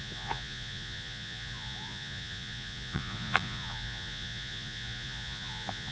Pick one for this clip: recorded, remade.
remade